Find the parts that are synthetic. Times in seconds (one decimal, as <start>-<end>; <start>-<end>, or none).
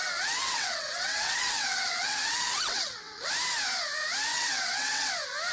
0.0-3.3; 4.3-5.1